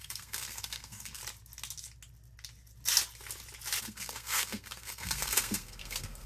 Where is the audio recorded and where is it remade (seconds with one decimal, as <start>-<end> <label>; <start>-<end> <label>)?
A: 0.0-1.2 remade; 1.2-3.8 recorded; 3.8-6.3 remade